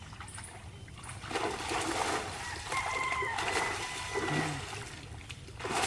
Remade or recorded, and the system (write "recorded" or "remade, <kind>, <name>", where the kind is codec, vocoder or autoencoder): recorded